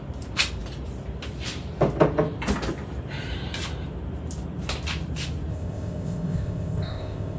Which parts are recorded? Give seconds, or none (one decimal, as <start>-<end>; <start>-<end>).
0.0-5.5